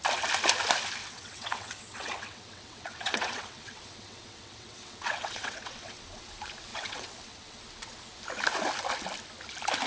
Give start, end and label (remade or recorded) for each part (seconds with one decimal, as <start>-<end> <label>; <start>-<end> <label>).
0.0-1.0 recorded; 1.0-6.2 remade; 6.2-6.7 recorded; 6.7-7.6 remade; 7.6-9.9 recorded

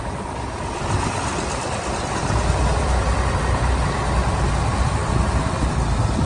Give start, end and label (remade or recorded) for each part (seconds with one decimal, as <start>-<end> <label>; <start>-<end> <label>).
0.0-6.3 recorded

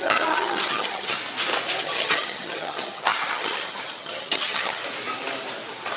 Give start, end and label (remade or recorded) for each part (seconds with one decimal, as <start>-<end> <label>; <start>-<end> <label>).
0.0-1.2 remade; 1.2-1.8 recorded; 1.8-4.8 remade; 4.8-6.0 recorded

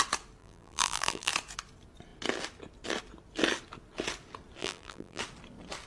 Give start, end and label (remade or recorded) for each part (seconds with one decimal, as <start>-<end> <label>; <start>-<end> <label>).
0.0-0.4 recorded; 0.4-1.3 remade; 1.3-4.6 recorded; 4.6-5.2 remade; 5.2-5.9 recorded

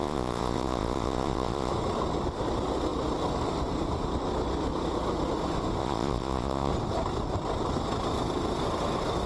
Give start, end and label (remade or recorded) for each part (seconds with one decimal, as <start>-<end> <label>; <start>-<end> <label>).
0.0-1.7 remade; 1.7-5.8 recorded; 5.8-6.7 remade; 6.7-9.3 recorded

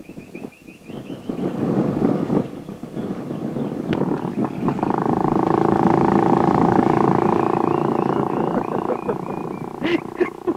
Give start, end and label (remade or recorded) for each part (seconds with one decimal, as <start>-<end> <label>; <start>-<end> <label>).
0.0-9.3 remade; 9.3-10.2 recorded; 10.2-10.6 remade